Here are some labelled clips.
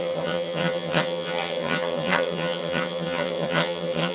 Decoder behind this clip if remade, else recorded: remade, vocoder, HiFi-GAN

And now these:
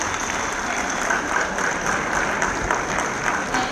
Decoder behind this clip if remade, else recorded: recorded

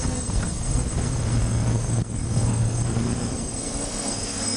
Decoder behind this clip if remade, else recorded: remade, codec, SNAC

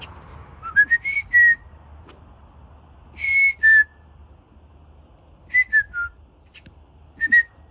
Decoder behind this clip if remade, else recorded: recorded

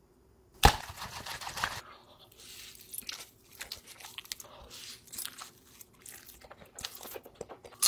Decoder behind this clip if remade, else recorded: recorded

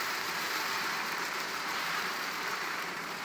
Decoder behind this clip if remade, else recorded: remade, vocoder, BigVGAN v2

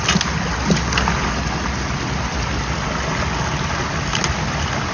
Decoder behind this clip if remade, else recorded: recorded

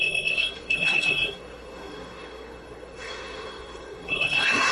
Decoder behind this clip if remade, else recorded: remade, codec, SNAC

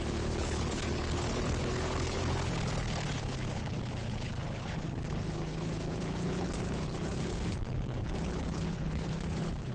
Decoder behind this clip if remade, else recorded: remade, codec, HILCodec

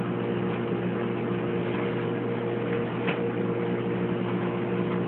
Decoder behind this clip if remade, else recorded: recorded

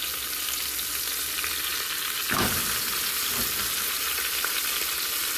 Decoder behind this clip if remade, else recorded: recorded